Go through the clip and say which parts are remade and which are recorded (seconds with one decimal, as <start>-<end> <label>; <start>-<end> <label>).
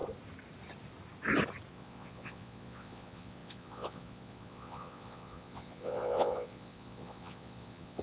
0.0-1.7 recorded; 1.7-8.0 remade